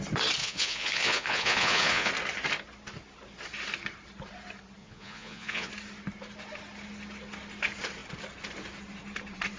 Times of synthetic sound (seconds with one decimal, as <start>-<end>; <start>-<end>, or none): 0.4-2.1; 4.8-5.7